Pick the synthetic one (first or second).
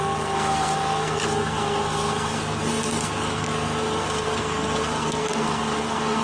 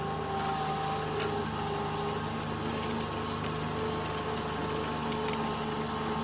first